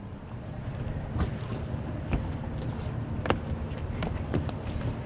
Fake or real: real